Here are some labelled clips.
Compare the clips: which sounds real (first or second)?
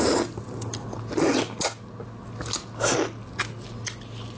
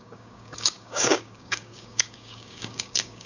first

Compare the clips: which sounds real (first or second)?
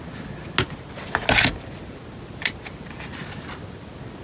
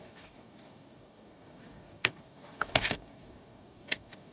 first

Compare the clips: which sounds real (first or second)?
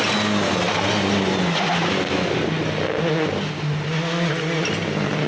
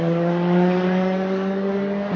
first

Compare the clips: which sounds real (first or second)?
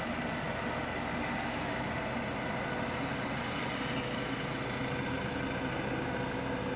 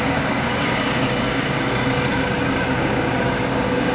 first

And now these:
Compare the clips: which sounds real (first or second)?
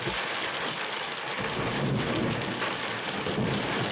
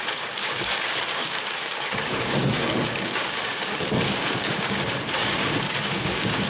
first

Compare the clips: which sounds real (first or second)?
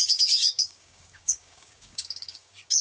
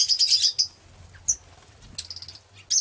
second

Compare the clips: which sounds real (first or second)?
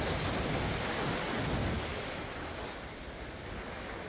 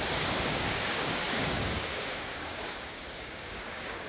first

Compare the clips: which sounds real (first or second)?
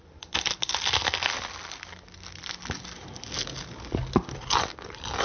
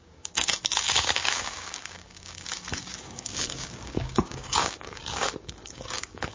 first